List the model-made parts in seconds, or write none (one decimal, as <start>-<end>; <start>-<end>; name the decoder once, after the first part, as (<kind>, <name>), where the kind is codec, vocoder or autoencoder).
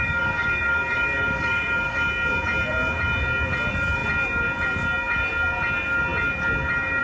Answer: 0.0-2.1 (codec, DAC)